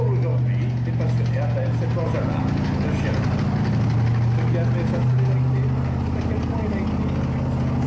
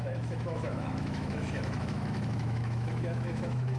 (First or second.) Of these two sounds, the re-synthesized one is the second